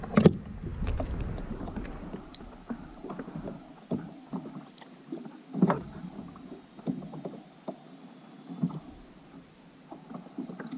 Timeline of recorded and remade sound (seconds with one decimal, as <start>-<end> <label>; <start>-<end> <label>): 0.0-10.8 recorded

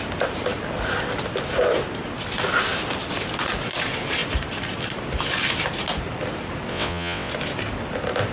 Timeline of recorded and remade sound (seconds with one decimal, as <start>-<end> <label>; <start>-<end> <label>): 0.0-6.7 recorded; 6.7-7.3 remade; 7.3-8.3 recorded

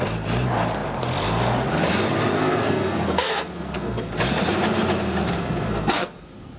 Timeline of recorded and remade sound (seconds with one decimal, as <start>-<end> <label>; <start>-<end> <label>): 0.0-2.3 recorded; 2.3-4.1 remade; 4.1-5.4 recorded; 5.4-6.6 remade

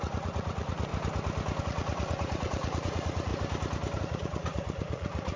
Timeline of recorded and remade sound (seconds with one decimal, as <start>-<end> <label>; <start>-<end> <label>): 0.0-0.9 remade; 0.9-1.6 recorded; 1.6-3.3 remade; 3.3-4.0 recorded; 4.0-5.4 remade